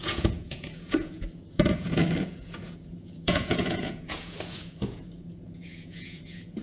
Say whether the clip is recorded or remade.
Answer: remade